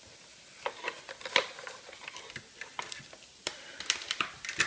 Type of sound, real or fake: real